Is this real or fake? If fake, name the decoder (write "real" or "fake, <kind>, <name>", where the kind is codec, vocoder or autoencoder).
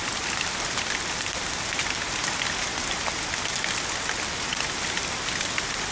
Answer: real